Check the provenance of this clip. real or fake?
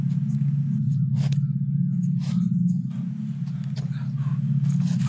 real